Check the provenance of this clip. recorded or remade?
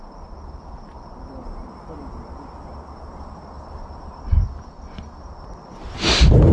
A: recorded